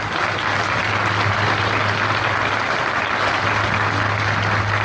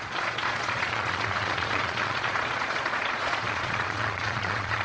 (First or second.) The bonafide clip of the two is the first